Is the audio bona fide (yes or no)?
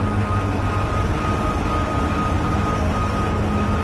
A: yes